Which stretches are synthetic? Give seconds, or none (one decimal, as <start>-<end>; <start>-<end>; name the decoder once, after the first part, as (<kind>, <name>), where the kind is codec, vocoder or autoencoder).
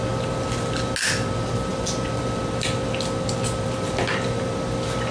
none